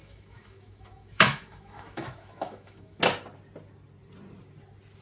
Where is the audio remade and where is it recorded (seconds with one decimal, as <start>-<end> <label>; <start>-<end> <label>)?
0.0-3.0 remade; 3.0-5.0 recorded